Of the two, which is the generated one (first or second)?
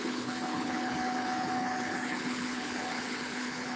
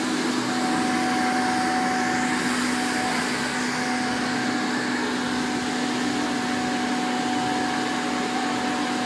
first